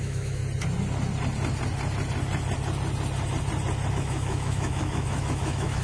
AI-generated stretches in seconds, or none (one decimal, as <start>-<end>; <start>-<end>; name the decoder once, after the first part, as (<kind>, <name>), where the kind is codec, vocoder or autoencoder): 0.0-0.4 (autoencoder, DAC-VAE); 3.9-5.8